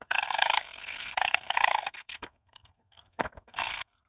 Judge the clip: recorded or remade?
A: remade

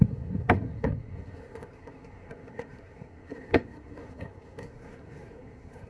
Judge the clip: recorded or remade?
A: remade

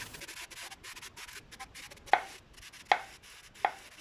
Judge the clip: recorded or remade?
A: recorded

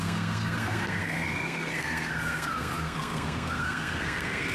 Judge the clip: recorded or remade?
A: remade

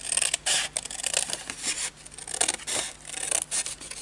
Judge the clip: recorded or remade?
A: recorded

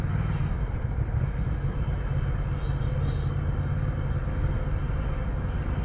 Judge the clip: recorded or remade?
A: recorded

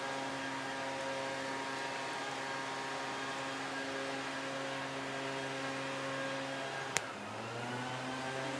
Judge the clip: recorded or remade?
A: recorded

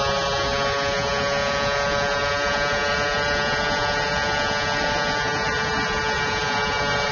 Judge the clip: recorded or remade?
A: recorded